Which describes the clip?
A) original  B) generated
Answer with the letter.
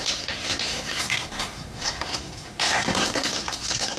B